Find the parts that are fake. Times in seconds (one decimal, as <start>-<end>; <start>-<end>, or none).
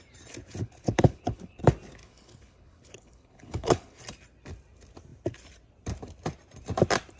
0.6-1.6; 2.0-4.0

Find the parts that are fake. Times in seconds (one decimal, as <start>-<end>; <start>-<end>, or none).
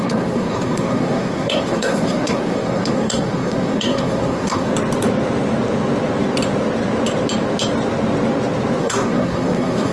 0.0-4.7; 8.8-9.9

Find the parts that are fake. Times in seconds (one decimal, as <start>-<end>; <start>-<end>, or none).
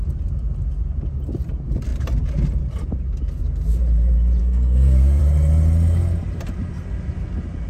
4.4-5.2